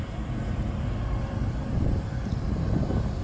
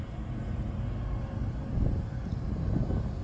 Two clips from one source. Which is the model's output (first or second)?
first